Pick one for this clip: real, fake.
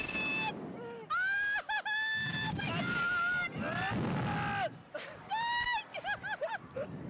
real